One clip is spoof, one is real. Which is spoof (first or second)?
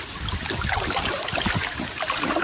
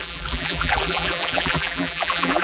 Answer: second